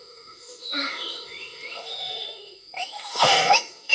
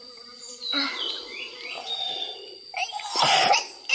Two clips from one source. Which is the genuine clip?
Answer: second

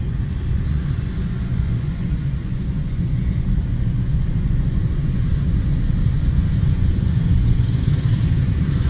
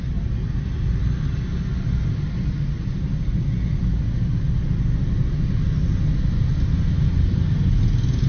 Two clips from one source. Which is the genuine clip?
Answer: second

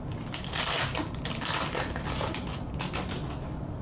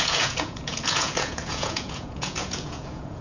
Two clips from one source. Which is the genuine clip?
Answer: first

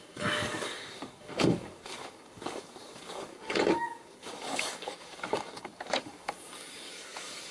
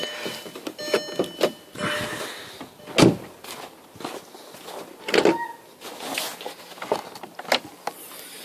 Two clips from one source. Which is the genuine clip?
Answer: second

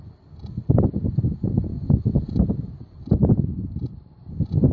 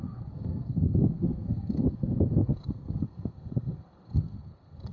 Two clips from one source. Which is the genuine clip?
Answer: first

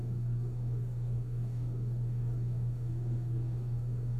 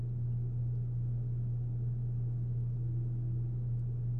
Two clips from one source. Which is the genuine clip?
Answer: second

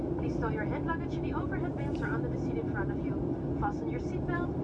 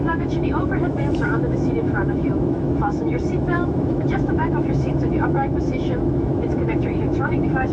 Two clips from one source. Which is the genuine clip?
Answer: first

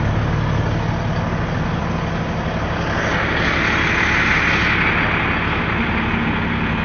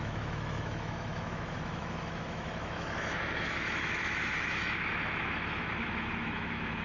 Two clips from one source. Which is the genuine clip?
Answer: first